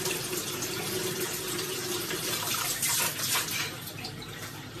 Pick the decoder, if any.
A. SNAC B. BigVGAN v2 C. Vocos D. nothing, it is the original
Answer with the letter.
D